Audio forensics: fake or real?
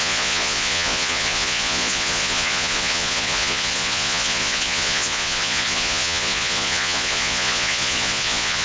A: fake